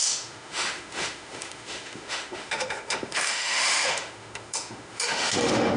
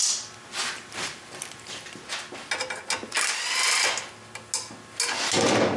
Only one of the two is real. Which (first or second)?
second